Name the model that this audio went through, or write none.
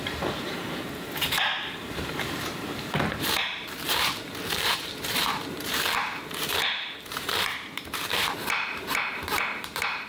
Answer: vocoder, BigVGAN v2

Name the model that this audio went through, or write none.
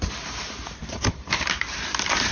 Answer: vocoder, BigVGAN v2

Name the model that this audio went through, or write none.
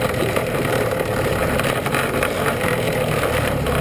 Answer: vocoder, BigVGAN v2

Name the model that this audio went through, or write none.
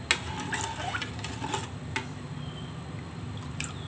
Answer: none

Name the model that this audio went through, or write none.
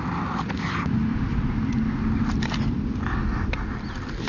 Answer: none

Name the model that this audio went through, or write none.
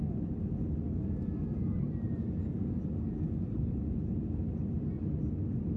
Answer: none